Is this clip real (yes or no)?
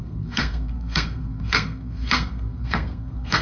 no